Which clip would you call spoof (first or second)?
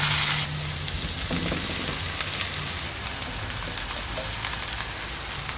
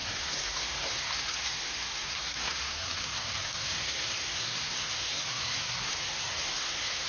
second